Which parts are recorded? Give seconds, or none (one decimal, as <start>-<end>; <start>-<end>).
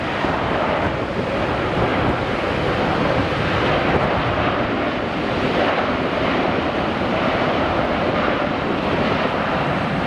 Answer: 3.3-4.2